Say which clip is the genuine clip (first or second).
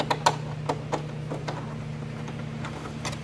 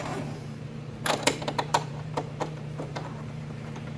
first